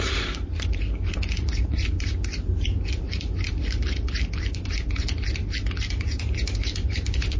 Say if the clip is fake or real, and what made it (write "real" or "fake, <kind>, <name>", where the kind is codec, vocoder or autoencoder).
fake, vocoder, BigVGAN v2